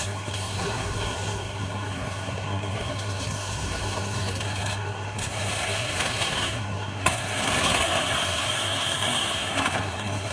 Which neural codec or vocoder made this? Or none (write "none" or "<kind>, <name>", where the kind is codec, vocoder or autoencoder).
codec, SNAC